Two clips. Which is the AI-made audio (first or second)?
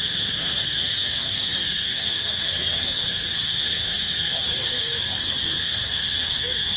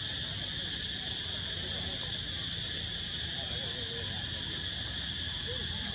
first